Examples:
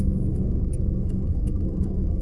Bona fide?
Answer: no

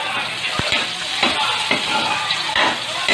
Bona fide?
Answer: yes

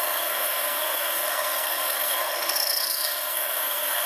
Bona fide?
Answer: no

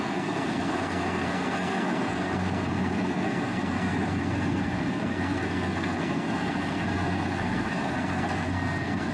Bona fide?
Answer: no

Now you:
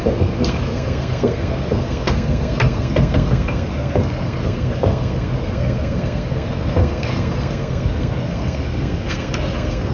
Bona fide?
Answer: no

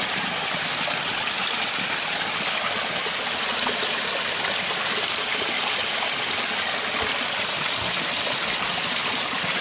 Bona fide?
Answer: yes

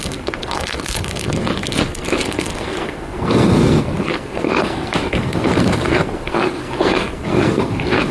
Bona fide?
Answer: no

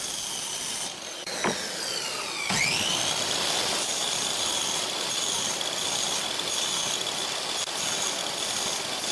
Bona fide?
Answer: yes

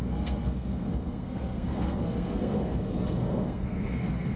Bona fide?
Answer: no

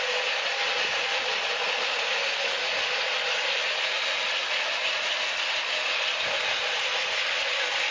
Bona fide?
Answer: yes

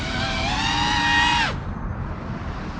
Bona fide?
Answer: yes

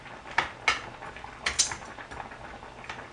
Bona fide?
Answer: yes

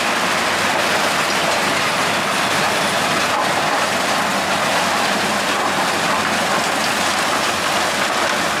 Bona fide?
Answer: yes